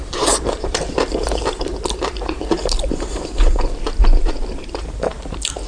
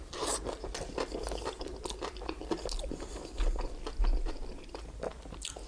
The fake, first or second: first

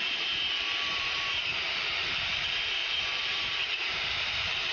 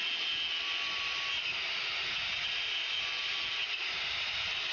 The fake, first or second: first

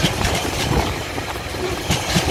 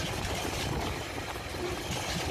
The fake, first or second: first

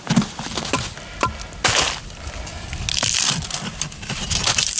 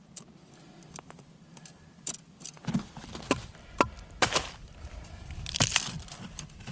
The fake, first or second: second